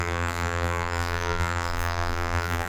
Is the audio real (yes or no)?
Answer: no